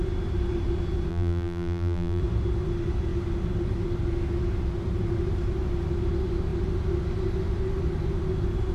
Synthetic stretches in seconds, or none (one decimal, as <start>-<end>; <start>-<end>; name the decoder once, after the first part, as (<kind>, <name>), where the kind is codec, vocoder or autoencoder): 1.1-2.2 (vocoder, BigVGAN v2)